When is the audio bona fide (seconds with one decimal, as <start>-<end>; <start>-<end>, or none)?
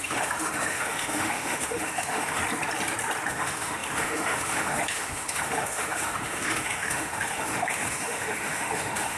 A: 2.4-3.3